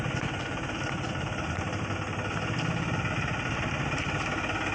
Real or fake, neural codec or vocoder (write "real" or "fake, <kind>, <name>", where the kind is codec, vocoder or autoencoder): real